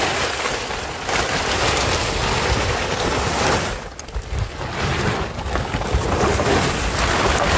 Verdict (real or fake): real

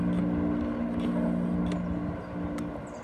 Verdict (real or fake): real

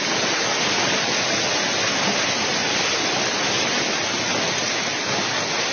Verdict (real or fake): real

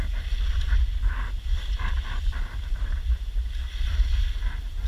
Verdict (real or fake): real